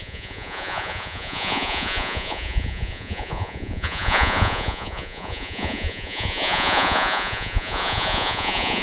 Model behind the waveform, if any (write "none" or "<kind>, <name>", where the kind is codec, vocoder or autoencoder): vocoder, Vocos